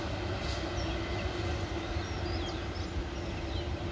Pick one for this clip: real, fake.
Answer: real